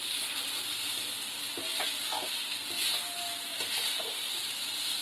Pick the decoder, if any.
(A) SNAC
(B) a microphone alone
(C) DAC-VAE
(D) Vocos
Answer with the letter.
B